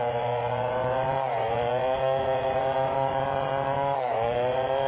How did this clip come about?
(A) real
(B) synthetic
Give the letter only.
B